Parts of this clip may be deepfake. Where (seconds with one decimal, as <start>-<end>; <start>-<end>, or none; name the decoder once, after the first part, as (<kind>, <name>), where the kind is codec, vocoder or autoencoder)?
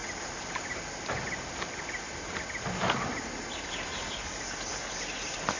none